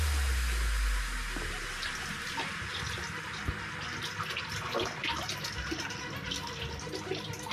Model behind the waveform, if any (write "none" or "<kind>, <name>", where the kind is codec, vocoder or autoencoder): none